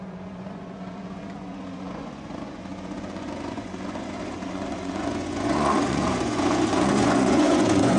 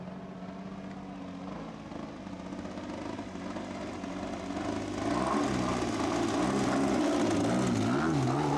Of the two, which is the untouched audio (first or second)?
second